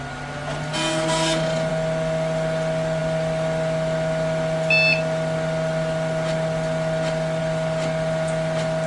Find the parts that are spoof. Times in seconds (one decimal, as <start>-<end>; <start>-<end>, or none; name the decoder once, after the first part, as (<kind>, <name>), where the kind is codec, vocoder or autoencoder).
none